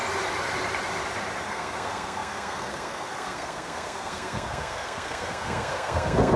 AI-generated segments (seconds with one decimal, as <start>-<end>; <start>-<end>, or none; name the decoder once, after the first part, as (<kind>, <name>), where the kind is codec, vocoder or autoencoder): 1.5-6.4 (codec, SNAC)